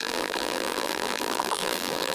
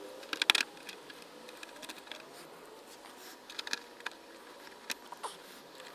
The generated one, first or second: first